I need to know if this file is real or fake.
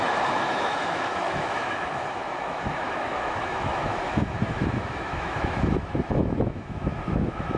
fake